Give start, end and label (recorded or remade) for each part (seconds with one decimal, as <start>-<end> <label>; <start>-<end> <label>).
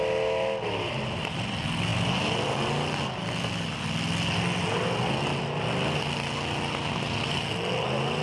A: 0.0-8.2 recorded